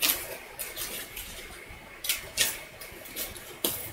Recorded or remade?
recorded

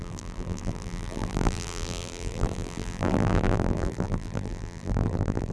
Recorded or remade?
remade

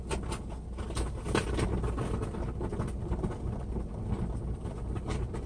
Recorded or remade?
recorded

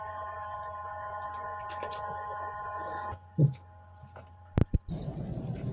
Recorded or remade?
recorded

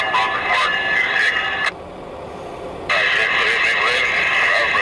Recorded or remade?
recorded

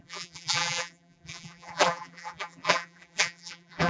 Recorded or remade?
remade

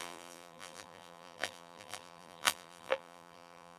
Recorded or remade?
remade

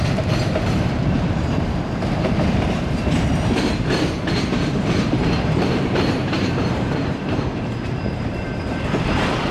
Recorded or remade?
remade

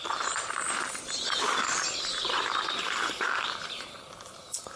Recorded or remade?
remade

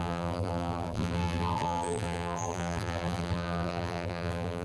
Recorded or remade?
remade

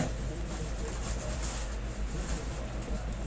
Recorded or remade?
recorded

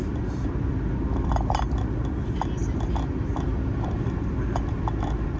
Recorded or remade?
recorded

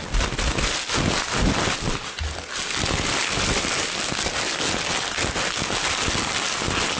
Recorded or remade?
recorded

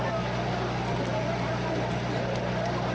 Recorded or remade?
recorded